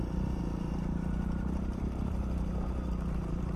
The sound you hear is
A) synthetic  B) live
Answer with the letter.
A